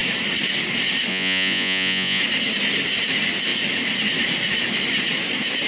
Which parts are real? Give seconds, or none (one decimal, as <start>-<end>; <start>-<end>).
0.0-1.1; 2.2-5.7